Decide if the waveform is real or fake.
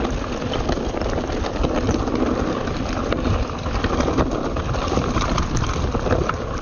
real